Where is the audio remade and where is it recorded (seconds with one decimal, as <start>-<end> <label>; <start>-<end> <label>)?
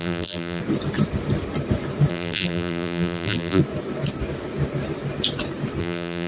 0.0-0.6 remade; 0.6-2.1 recorded; 2.1-3.6 remade; 3.6-5.8 recorded; 5.8-6.3 remade